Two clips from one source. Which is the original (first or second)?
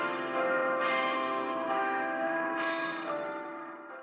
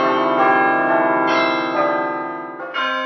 second